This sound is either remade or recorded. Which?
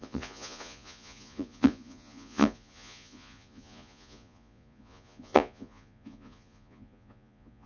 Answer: remade